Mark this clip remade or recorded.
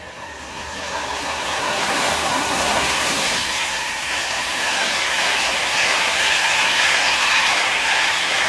remade